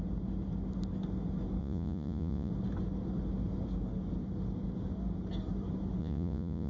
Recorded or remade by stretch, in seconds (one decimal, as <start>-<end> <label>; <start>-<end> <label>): 0.0-1.6 recorded; 1.6-2.5 remade; 2.5-6.0 recorded; 6.0-6.7 remade